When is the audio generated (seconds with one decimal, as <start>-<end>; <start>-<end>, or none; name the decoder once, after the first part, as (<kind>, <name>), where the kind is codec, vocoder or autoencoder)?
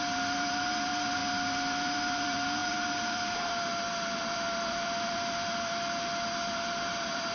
0.0-1.2 (vocoder, BigVGAN v2); 2.1-7.3